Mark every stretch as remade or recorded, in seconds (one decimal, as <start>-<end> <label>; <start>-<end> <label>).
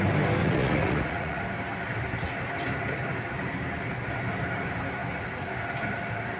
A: 0.0-0.4 recorded; 0.4-1.4 remade; 1.4-6.4 recorded